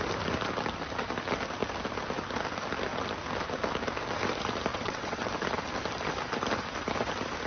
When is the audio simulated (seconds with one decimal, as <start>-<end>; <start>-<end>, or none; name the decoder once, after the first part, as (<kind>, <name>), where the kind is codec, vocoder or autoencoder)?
4.7-5.3 (vocoder, WaveNeXt)